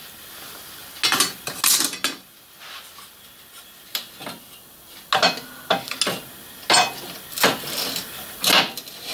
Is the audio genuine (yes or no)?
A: yes